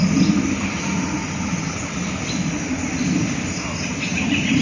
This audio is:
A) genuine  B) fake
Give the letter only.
A